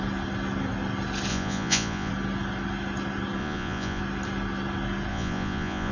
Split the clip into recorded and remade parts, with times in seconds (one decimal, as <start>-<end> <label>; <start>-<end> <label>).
0.0-1.3 recorded; 1.3-2.1 remade; 2.1-3.4 recorded; 3.4-4.0 remade; 4.0-5.1 recorded; 5.1-5.9 remade